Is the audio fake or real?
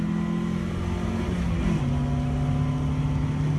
real